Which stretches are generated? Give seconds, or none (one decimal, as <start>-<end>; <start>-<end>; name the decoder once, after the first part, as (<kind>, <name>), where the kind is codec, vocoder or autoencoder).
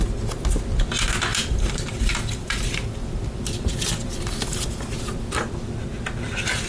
1.3-5.3 (vocoder, BigVGAN v2)